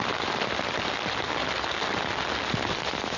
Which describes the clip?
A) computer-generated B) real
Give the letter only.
B